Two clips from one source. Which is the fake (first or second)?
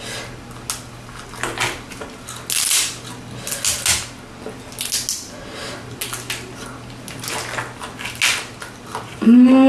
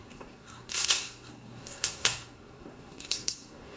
second